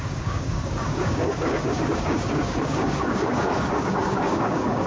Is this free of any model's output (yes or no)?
no